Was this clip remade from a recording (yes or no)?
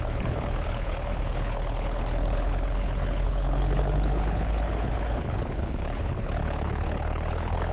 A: yes